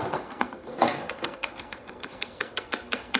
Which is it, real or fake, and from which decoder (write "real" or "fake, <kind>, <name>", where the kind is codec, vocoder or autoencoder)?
fake, codec, SNAC